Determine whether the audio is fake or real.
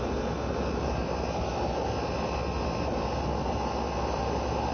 real